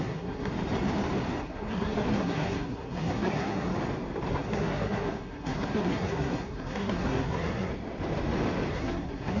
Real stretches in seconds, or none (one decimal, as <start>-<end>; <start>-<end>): 0.5-1.4; 3.7-4.3; 7.7-8.7